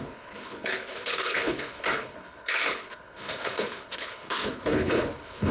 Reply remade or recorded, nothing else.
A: remade